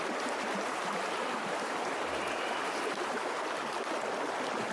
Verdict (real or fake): real